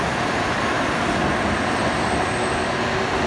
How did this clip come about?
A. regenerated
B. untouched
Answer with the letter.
B